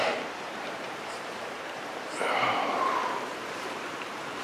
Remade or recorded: remade